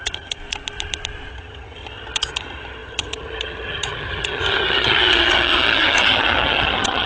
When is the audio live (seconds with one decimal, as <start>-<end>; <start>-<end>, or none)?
0.4-1.3